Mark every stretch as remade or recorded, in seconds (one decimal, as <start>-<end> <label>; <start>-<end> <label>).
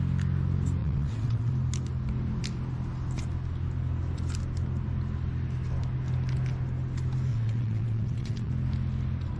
0.0-0.8 recorded; 0.8-1.5 remade; 1.5-7.3 recorded; 7.3-8.5 remade; 8.5-9.4 recorded